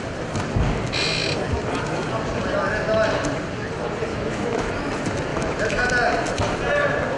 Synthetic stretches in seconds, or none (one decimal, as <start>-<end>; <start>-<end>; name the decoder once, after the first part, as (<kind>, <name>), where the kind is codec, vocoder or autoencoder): 4.1-4.7 (autoencoder, DAC-VAE); 5.3-5.9